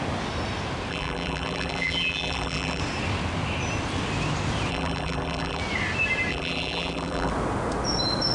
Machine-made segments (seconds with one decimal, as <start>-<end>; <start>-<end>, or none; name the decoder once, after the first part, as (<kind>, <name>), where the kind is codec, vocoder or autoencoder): 0.9-2.8 (vocoder, BigVGAN v2); 4.7-5.6; 6.3-7.3